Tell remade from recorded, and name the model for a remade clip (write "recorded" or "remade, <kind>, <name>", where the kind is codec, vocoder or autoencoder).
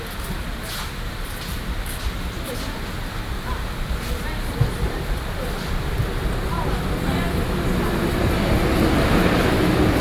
recorded